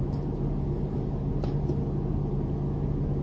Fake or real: real